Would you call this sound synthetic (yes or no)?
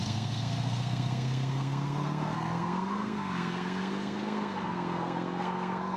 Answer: yes